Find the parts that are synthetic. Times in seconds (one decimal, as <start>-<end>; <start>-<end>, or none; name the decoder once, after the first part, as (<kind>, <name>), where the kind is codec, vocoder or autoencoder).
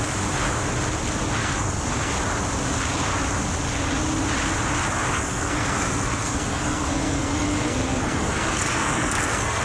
1.4-2.1 (codec, SNAC); 5.1-9.6